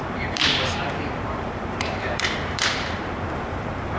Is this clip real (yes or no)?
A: no